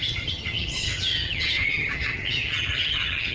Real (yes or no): no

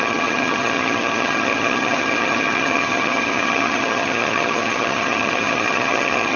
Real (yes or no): no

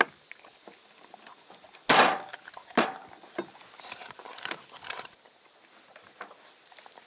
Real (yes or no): yes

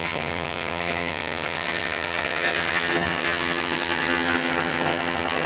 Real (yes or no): no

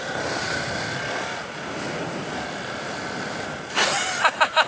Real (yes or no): yes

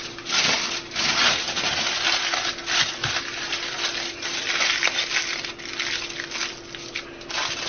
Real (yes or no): yes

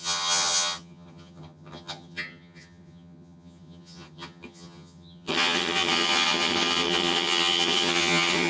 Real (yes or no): no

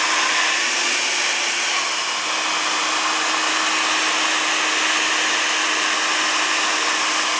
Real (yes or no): yes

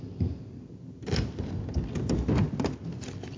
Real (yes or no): yes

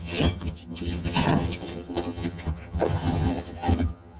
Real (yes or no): no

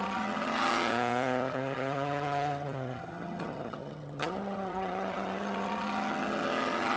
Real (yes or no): no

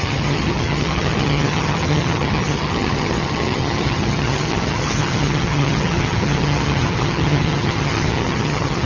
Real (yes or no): no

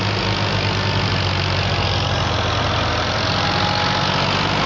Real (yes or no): yes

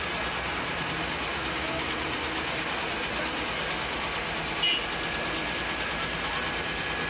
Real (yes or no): yes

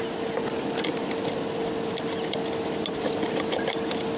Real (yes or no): yes